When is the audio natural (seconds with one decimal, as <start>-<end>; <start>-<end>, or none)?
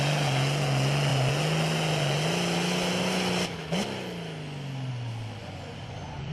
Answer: 0.0-5.4